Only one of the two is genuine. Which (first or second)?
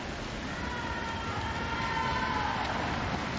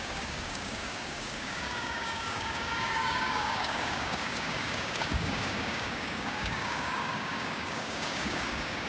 first